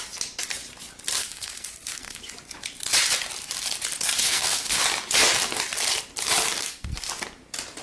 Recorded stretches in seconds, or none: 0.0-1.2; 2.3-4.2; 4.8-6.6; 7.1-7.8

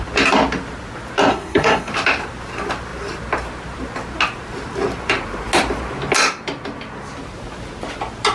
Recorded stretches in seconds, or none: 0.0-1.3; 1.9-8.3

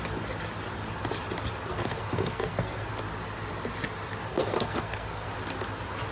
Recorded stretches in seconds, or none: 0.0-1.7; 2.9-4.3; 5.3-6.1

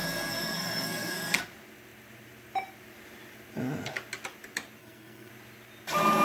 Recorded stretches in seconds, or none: 1.4-4.8; 5.3-6.2